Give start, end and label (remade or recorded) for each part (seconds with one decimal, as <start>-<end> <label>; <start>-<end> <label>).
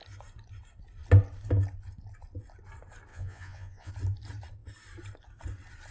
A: 0.0-3.1 recorded; 3.1-3.9 remade; 3.9-5.9 recorded